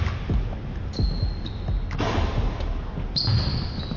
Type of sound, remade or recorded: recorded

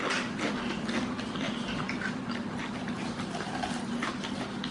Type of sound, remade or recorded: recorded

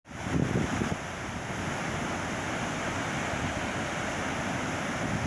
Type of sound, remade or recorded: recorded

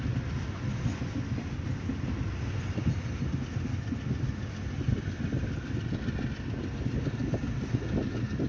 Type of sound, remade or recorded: recorded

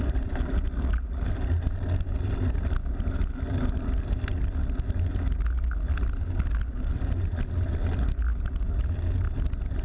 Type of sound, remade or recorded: recorded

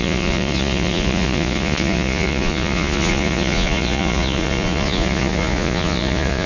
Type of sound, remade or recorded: remade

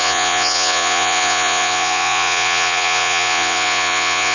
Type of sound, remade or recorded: remade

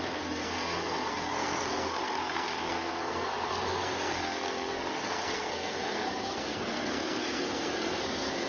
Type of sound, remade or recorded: remade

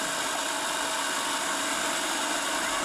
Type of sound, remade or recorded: recorded